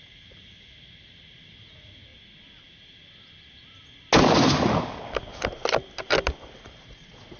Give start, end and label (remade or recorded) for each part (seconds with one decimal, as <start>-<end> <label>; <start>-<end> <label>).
0.0-2.1 remade; 2.1-6.5 recorded; 6.5-7.4 remade